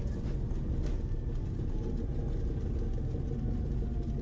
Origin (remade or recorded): recorded